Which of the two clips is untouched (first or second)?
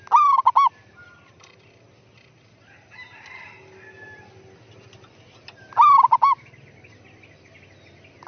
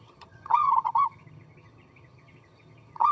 first